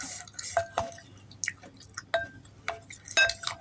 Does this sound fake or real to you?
real